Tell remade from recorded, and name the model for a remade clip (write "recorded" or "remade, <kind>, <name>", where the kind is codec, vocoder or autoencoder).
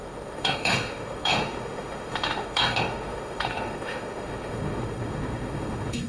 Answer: remade, autoencoder, DAC-VAE